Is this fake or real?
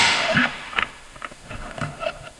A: fake